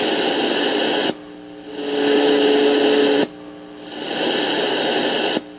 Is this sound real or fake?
real